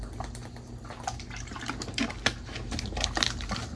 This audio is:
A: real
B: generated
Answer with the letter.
A